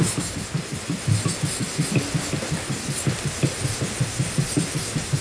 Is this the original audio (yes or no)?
yes